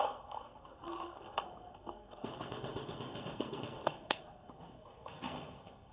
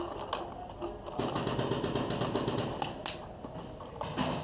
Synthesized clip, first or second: first